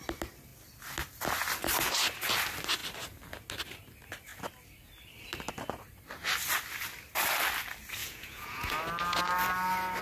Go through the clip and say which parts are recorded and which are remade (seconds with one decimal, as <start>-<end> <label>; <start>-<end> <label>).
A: 0.0-8.0 recorded; 8.0-8.7 remade; 8.7-10.0 recorded